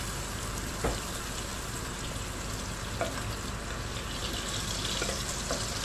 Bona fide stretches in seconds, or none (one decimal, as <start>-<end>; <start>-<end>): 0.0-5.8